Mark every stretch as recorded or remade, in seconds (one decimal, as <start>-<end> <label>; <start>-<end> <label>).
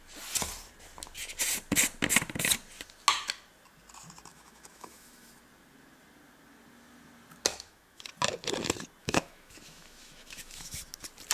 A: 0.0-4.3 recorded; 4.3-5.3 remade; 5.3-7.5 recorded; 7.5-8.0 remade; 8.0-9.0 recorded; 9.0-10.8 remade; 10.8-11.3 recorded